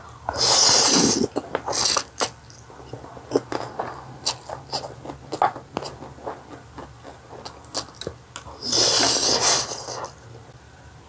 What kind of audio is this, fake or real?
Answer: real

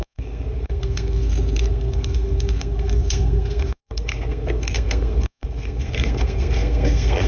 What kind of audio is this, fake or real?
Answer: fake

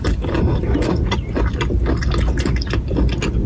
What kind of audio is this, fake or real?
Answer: real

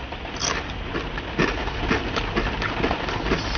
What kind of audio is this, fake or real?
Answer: real